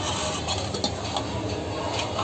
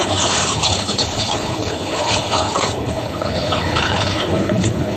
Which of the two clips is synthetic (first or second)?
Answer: second